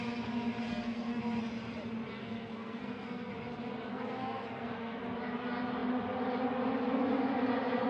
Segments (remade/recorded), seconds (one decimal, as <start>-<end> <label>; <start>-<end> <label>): 0.0-0.7 recorded; 0.7-1.2 remade; 1.2-2.2 recorded; 2.2-3.3 remade; 3.3-3.9 recorded; 3.9-5.0 remade; 5.0-7.9 recorded